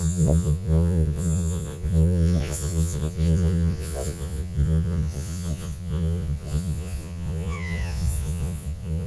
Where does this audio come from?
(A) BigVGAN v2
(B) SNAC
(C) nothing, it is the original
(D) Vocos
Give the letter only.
D